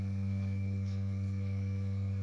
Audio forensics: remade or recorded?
remade